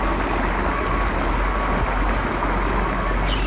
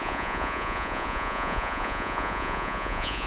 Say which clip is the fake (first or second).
second